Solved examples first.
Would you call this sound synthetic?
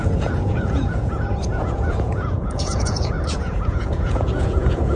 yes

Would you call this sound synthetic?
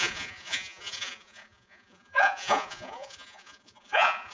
yes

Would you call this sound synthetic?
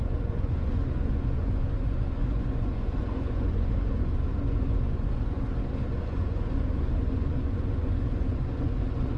yes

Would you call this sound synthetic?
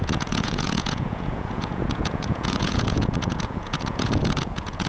yes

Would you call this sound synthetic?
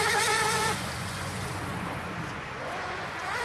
yes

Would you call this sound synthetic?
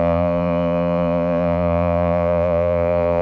yes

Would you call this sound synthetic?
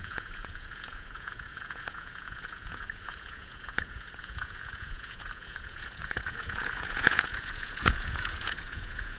yes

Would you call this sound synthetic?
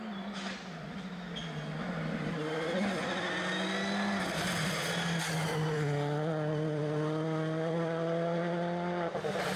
no